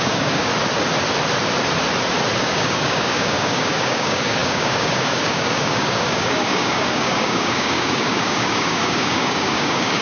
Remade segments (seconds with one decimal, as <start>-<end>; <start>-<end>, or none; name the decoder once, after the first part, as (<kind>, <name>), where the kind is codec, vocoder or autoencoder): 0.0-0.5 (codec, DAC); 2.4-10.0